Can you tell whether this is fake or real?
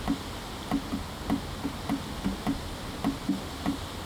real